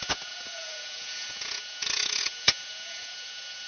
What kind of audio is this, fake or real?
fake